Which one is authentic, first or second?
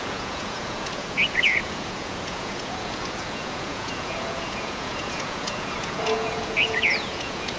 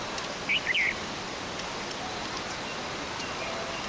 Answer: second